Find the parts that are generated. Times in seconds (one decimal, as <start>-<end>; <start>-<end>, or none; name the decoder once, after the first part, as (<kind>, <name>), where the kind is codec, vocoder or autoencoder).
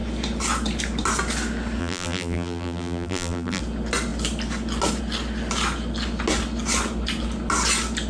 1.8-3.6 (vocoder, BigVGAN v2)